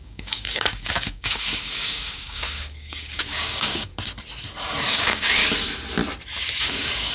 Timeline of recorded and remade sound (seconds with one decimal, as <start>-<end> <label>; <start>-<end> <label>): 0.0-3.9 remade; 3.9-4.9 recorded; 4.9-5.4 remade; 5.4-6.6 recorded; 6.6-7.1 remade